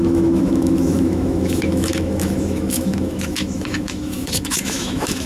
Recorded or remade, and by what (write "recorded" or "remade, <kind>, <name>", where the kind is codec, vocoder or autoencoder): remade, autoencoder, DAC-VAE